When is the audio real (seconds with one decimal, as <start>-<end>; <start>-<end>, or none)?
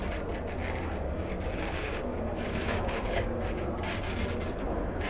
0.0-0.6; 3.7-5.1